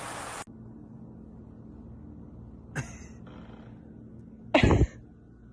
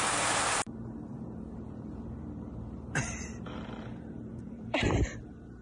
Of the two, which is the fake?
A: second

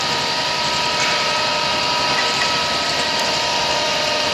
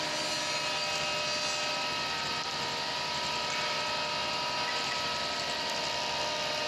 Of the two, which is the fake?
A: first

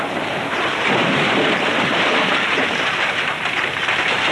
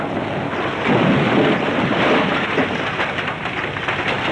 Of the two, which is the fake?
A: first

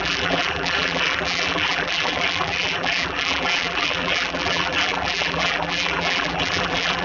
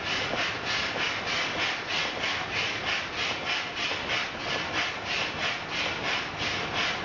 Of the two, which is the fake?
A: first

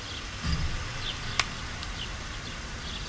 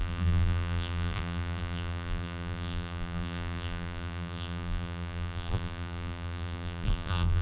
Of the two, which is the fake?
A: second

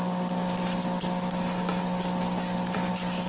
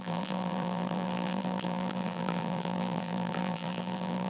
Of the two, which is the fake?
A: second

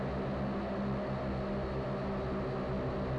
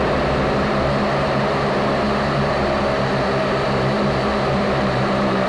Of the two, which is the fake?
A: second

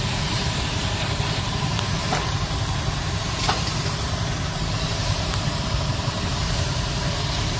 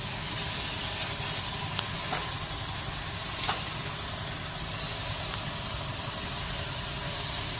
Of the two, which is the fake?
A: first